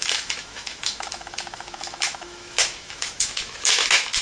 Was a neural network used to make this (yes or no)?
yes